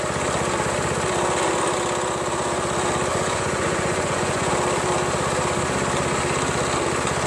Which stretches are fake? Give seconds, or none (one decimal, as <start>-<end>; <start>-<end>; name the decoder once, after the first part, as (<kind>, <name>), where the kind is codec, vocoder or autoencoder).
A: 3.1-4.5 (vocoder, Vocos)